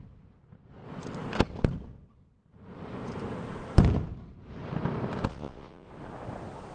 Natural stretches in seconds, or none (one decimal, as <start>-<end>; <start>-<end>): 0.0-5.3; 5.9-6.7